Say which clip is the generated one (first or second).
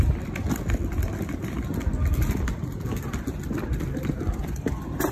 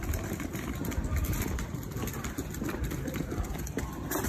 second